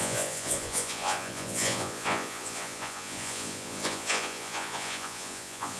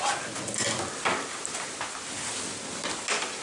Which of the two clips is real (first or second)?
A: second